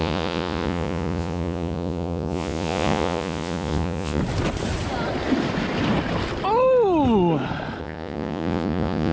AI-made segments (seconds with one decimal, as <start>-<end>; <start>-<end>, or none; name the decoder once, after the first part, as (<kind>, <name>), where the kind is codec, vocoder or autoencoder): 0.0-4.2 (vocoder, Vocos); 7.8-9.1